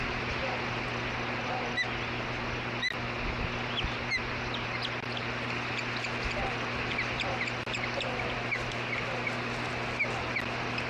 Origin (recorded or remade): recorded